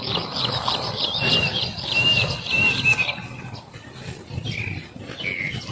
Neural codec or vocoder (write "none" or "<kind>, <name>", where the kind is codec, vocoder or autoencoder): none